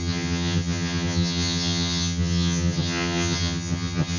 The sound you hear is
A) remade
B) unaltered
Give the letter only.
A